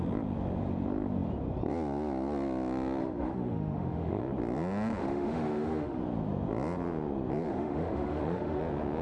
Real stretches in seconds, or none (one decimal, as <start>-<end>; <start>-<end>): 0.0-3.0; 4.2-5.0; 6.0-7.5; 8.6-9.0